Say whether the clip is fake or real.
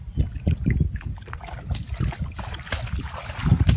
real